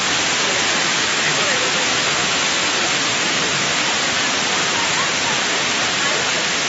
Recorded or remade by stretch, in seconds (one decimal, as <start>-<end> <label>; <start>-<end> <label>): 0.0-0.9 recorded; 0.9-2.6 remade; 2.6-6.7 recorded